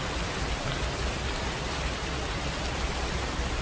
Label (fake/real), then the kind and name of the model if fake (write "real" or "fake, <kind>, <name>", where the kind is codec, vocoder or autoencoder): real